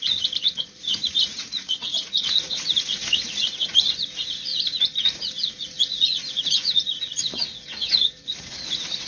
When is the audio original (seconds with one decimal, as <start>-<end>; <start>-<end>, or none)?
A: none